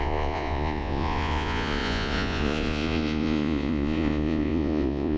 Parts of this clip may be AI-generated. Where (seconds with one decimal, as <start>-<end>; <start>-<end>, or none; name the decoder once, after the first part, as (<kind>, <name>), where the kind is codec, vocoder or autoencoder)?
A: 0.0-5.2 (vocoder, Vocos)